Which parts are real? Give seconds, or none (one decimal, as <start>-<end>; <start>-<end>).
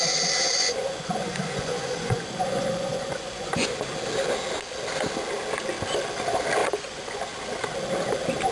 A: 0.0-0.6; 3.8-6.6; 7.2-8.5